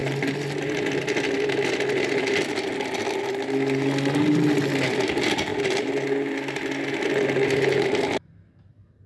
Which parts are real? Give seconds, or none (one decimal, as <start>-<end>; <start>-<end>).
0.0-9.1